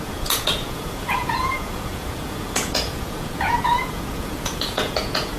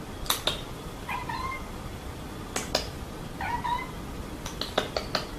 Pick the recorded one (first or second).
second